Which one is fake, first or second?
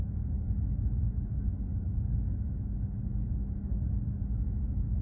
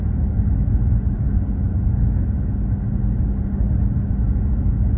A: first